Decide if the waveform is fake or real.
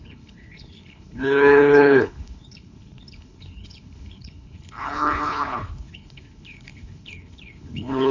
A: fake